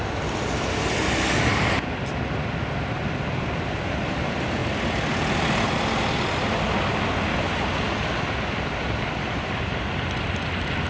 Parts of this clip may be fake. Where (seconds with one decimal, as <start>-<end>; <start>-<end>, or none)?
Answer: none